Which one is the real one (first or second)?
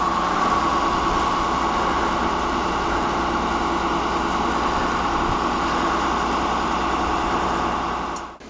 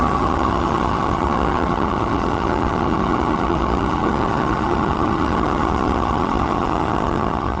first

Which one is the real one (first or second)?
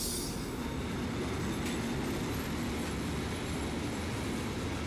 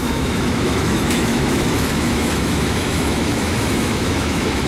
first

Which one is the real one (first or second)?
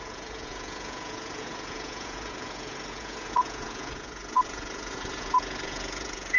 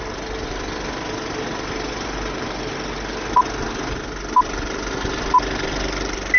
second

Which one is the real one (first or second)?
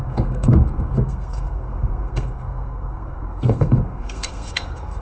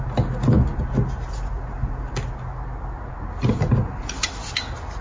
second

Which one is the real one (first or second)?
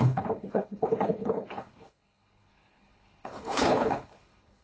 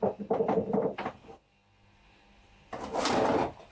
second